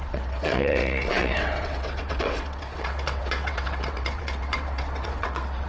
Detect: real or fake fake